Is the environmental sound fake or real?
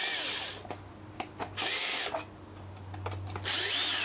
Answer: real